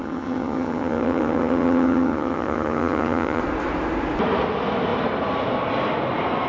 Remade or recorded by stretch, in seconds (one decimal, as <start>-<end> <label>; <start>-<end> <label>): 0.0-3.4 remade; 3.4-6.5 recorded